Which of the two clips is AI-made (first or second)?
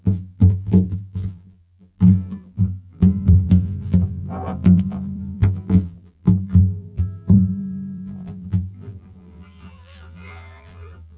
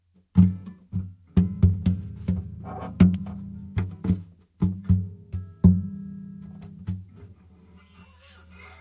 first